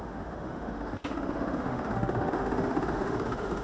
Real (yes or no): no